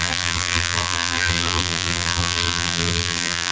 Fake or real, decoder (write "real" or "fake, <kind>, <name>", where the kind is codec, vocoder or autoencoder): fake, vocoder, BigVGAN v2